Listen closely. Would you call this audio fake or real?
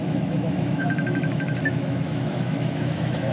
fake